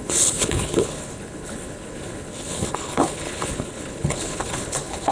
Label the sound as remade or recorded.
remade